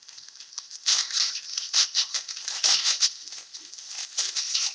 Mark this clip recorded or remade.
remade